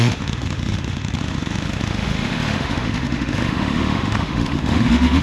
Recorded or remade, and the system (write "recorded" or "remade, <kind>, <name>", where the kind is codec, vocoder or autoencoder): remade, autoencoder, DAC-VAE